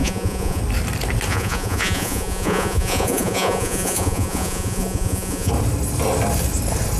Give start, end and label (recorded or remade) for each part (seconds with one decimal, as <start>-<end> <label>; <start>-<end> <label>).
0.0-0.6 remade; 0.6-1.3 recorded; 1.3-5.5 remade; 5.5-7.0 recorded